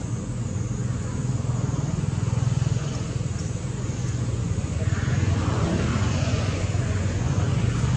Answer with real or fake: fake